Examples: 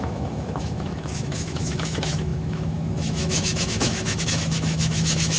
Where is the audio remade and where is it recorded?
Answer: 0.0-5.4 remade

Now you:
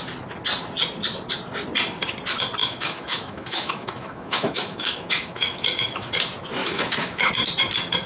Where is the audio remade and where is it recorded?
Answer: 0.0-2.6 recorded; 2.6-6.1 remade; 6.1-6.6 recorded; 6.6-7.3 remade; 7.3-8.1 recorded

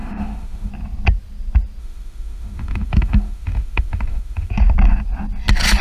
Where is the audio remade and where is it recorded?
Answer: 0.0-0.7 remade; 0.7-1.8 recorded; 1.8-4.5 remade; 4.5-5.8 recorded